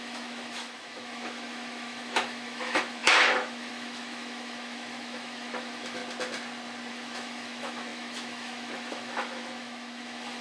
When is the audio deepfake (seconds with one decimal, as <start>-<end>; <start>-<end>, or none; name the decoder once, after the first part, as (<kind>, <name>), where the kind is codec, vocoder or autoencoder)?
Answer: 0.0-6.0 (autoencoder, DAC-VAE); 6.9-10.4